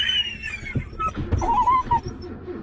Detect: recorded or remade recorded